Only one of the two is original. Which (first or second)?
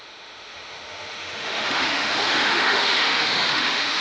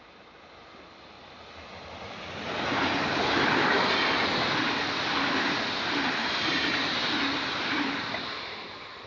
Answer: second